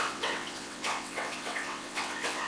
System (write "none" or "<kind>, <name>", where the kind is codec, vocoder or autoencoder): vocoder, WaveNeXt